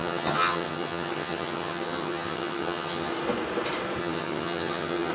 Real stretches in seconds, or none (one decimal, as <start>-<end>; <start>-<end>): 3.1-4.0